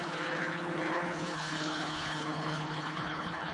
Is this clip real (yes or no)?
no